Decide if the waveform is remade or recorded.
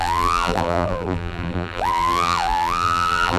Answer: remade